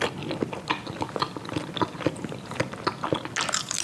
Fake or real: real